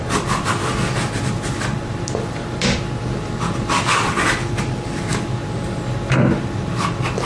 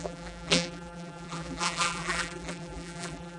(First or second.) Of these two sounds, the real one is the first